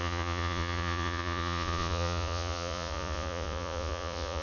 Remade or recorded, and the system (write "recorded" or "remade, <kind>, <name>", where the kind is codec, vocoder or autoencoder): remade, vocoder, Vocos